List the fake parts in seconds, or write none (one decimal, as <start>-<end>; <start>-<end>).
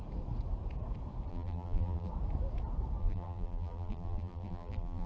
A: 1.3-2.1; 3.0-5.1